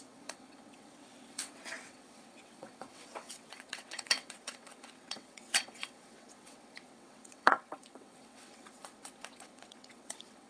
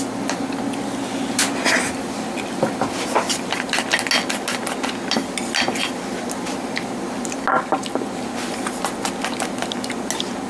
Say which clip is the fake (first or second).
first